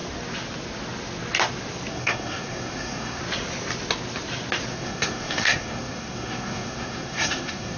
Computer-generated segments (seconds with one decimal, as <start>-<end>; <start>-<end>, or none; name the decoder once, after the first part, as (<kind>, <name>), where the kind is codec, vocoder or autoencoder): 1.9-3.2 (codec, SNAC); 4.7-7.8